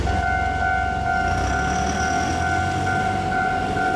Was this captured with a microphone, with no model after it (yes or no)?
yes